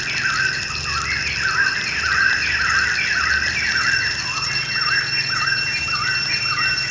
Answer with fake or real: real